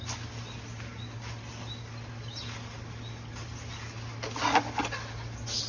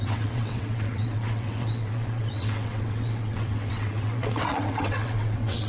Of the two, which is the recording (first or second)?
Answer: first